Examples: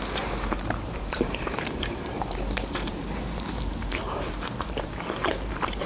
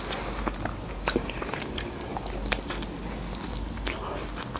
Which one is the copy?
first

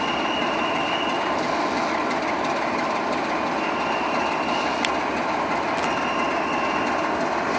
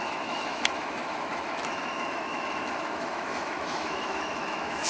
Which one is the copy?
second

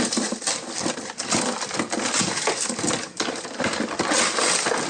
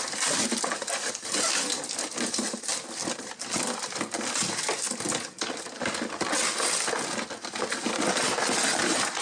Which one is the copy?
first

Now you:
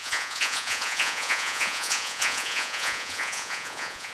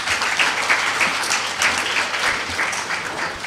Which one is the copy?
first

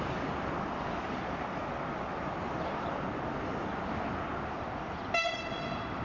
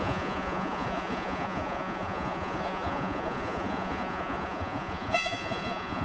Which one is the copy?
second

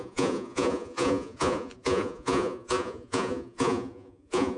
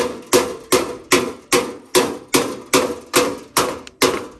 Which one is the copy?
first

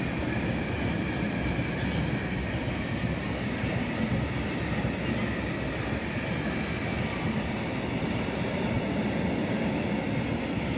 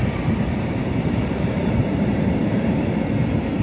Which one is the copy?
second